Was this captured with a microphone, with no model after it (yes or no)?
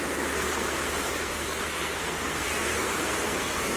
no